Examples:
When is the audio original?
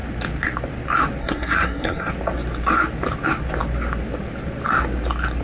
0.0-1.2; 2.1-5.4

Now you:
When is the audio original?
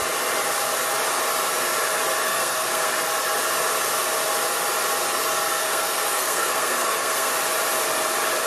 0.0-2.2; 2.9-5.6; 7.3-8.5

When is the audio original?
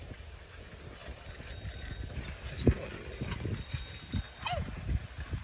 0.0-5.4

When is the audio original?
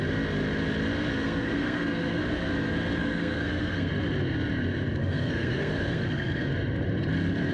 0.0-1.1; 2.2-3.0; 3.9-5.0; 6.5-7.5